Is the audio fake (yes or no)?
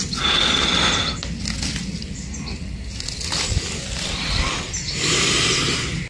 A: no